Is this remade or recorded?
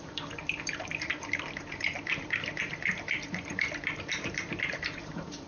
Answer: remade